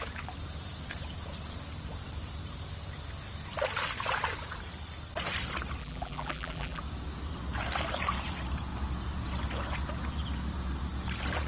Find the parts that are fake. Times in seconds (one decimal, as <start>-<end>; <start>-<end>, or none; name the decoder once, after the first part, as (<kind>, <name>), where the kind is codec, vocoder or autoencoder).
5.8-6.8 (vocoder, BigVGAN v2)

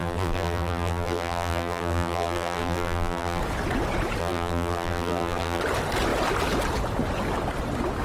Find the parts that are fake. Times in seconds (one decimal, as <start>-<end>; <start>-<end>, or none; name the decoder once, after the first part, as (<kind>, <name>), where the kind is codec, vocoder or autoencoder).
0.0-3.4 (vocoder, BigVGAN v2); 4.2-5.6